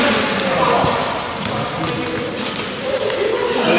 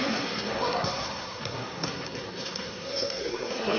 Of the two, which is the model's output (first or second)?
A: second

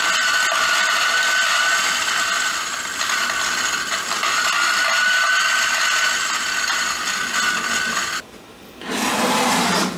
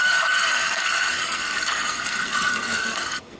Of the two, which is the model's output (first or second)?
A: second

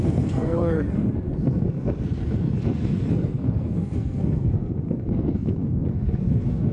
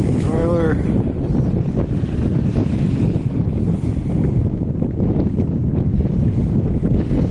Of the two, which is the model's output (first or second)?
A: first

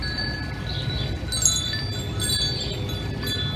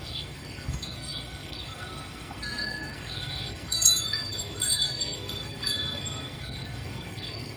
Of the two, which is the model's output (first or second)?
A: second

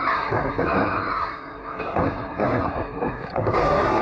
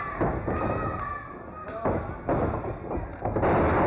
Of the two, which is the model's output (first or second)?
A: first